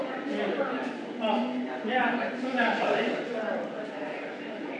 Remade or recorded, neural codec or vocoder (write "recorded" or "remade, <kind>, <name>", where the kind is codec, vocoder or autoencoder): remade, vocoder, BigVGAN v2